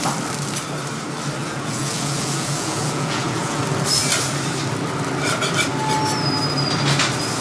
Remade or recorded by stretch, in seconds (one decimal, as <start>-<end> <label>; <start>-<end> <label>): 0.0-1.4 recorded; 1.4-3.6 remade; 3.6-7.4 recorded